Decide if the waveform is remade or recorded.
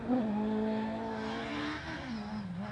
recorded